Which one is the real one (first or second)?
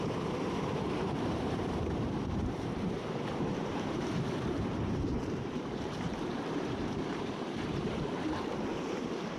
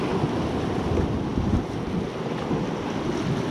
second